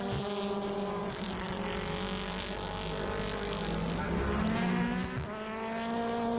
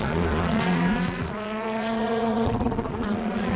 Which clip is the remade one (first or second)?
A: second